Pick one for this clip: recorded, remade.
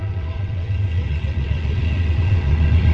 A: remade